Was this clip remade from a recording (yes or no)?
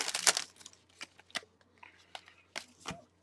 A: no